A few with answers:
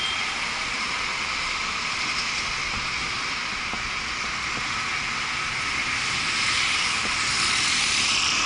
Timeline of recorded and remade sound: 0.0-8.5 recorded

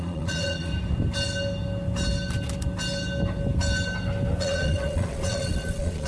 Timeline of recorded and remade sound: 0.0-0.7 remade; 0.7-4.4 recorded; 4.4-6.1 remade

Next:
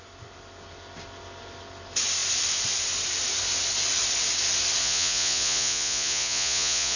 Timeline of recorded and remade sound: 0.0-4.8 recorded; 4.8-7.0 remade

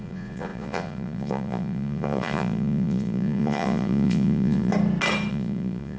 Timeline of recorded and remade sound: 0.0-4.7 remade; 4.7-5.3 recorded; 5.3-6.0 remade